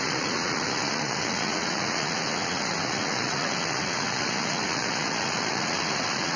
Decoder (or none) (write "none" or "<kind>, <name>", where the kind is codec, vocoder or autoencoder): vocoder, Vocos